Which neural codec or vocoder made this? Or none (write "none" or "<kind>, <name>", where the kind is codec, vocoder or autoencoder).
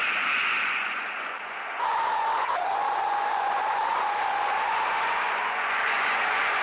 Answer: vocoder, Vocos